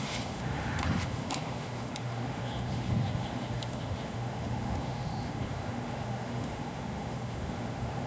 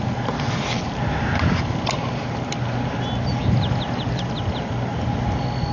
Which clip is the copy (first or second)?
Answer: first